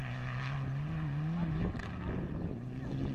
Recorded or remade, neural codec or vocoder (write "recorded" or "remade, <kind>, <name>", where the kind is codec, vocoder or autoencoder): recorded